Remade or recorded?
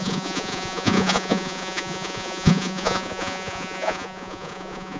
remade